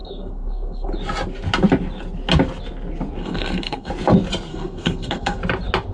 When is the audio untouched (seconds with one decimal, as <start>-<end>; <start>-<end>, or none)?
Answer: 0.9-3.2; 3.9-4.5; 5.4-5.9